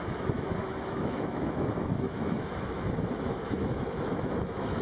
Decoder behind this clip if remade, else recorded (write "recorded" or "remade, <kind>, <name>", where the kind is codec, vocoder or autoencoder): remade, autoencoder, DAC-VAE